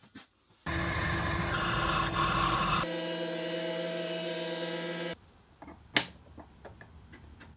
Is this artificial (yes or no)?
no